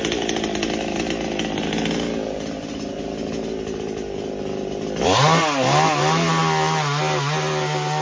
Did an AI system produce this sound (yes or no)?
no